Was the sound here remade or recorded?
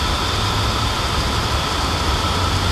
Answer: recorded